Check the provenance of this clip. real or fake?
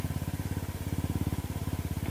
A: real